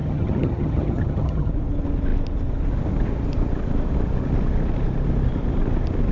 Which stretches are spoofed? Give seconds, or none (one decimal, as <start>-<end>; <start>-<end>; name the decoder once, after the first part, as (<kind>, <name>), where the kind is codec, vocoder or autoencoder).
0.0-1.5 (vocoder, HiFi-GAN)